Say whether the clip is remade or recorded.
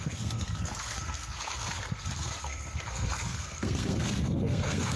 remade